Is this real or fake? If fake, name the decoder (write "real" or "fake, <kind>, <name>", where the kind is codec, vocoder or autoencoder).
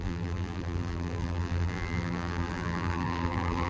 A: fake, vocoder, BigVGAN v2